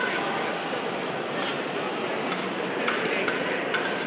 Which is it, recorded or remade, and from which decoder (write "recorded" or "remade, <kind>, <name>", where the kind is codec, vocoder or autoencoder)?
recorded